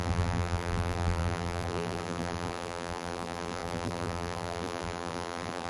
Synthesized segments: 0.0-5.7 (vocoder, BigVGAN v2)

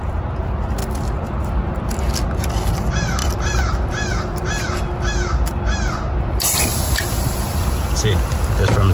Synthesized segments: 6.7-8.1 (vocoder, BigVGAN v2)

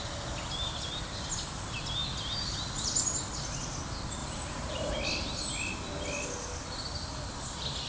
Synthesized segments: 4.2-4.9 (vocoder, BigVGAN v2)

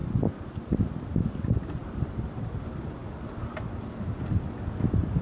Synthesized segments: 1.8-2.5 (vocoder, BigVGAN v2)